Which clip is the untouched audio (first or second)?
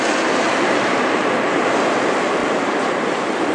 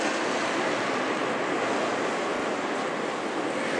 second